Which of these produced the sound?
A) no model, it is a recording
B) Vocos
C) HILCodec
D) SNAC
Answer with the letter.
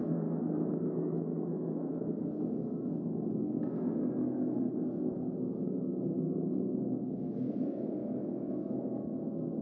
D